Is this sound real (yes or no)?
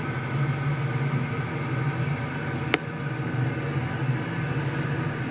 yes